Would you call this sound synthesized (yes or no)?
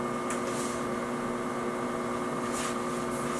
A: no